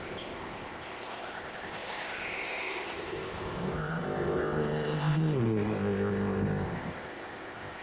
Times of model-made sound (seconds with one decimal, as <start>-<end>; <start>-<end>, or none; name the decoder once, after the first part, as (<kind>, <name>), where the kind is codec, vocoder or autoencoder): 0.0-7.8 (codec, ZipCodec)